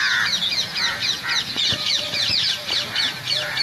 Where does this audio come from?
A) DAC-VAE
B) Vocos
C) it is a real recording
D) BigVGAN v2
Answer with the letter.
B